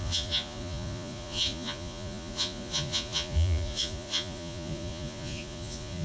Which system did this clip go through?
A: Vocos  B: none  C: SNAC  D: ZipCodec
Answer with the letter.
A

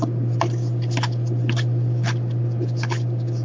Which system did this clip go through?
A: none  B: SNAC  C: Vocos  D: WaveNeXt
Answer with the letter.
A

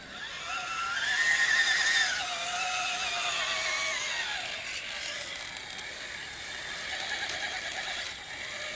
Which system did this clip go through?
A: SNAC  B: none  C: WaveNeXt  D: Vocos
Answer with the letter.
B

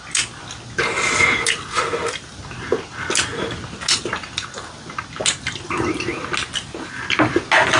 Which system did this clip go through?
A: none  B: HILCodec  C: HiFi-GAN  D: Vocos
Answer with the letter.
A